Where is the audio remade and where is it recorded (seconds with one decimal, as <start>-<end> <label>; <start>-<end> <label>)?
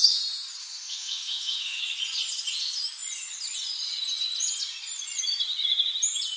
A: 0.0-0.6 recorded; 0.6-1.8 remade; 1.8-6.4 recorded